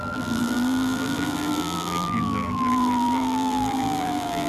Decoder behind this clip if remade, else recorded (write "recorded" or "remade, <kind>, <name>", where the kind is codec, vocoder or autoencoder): remade, vocoder, BigVGAN v2